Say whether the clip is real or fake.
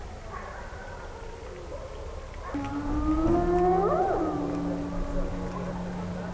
real